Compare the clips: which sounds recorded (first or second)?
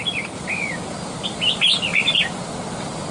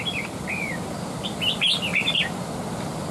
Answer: second